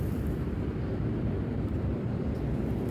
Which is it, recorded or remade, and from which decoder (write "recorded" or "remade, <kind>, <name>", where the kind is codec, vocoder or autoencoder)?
recorded